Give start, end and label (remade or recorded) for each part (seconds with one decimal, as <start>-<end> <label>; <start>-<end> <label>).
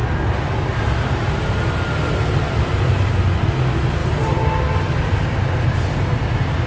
0.0-6.7 recorded